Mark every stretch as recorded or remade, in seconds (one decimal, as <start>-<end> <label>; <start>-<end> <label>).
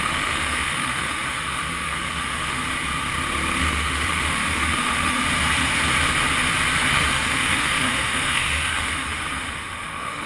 0.0-2.6 remade; 2.6-3.6 recorded; 3.6-5.2 remade; 5.2-6.9 recorded; 6.9-10.3 remade